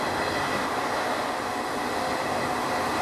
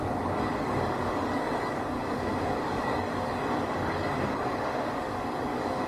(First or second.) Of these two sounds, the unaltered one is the first